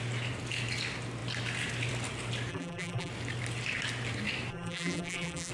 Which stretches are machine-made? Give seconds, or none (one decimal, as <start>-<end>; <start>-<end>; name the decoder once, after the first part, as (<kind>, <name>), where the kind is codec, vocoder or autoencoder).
2.5-3.1 (vocoder, BigVGAN v2); 4.5-5.5